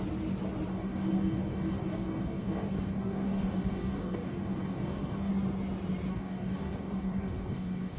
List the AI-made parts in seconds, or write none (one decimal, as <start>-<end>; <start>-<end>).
0.7-5.3; 6.1-8.0